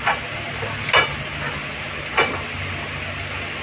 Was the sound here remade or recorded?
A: recorded